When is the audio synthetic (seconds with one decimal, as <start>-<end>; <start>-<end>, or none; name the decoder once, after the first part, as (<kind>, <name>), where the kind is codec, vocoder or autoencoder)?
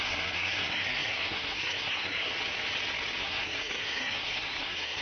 0.0-2.3 (codec, SNAC); 3.2-5.0